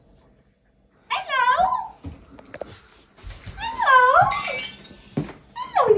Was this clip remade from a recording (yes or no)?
no